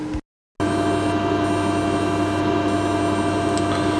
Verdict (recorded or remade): recorded